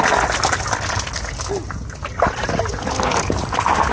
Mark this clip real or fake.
real